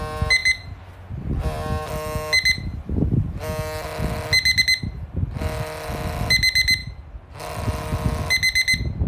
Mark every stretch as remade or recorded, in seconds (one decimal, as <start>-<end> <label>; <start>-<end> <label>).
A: 0.0-9.1 recorded